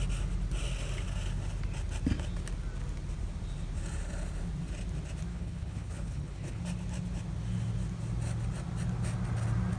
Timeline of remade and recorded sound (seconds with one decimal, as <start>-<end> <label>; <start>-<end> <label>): 0.0-5.3 recorded; 5.3-6.6 remade; 6.6-9.8 recorded